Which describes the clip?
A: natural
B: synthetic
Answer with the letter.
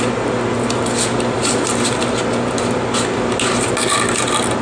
A